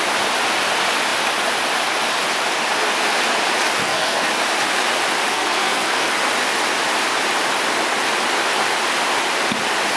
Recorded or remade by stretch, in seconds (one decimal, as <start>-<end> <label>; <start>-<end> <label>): 0.0-3.8 recorded; 3.8-4.3 remade; 4.3-5.3 recorded; 5.3-6.2 remade; 6.2-10.0 recorded